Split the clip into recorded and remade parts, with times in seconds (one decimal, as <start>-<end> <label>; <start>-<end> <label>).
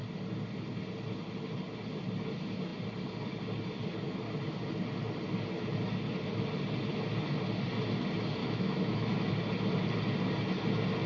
0.0-8.4 recorded; 8.4-9.3 remade; 9.3-11.1 recorded